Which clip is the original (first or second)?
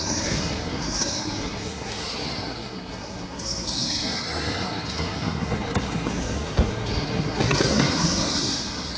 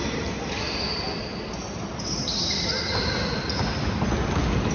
second